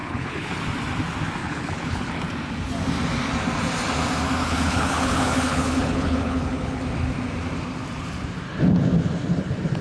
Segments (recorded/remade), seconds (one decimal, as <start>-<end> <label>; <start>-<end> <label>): 0.0-0.6 remade; 0.6-1.4 recorded; 1.4-2.2 remade; 2.2-4.4 recorded; 4.4-6.8 remade; 6.8-9.8 recorded